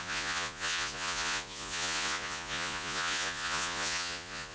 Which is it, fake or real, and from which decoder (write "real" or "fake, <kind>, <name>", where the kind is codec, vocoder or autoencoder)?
fake, vocoder, Vocos